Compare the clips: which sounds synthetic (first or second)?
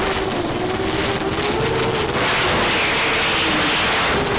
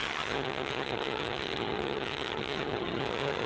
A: second